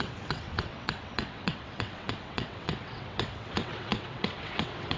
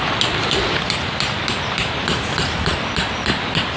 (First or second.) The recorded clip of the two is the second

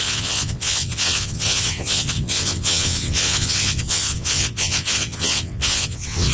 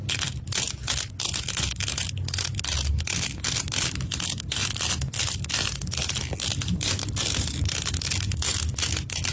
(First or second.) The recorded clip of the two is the second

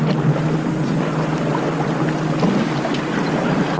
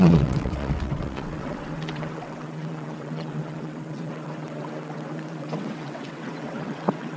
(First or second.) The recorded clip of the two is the first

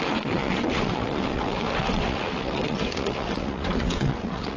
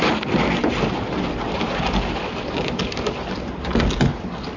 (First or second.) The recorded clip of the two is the second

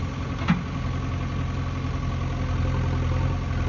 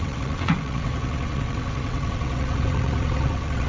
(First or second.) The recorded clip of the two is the first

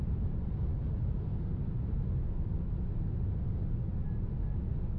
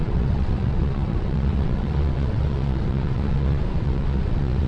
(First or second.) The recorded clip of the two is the first